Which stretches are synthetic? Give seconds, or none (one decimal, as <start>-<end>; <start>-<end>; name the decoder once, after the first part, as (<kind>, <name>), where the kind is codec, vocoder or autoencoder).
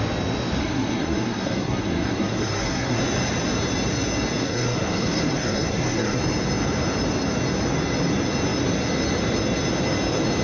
0.6-3.0 (codec, SNAC); 4.4-6.2